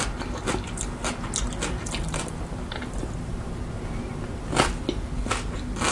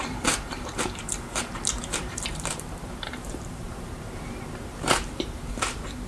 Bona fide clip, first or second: first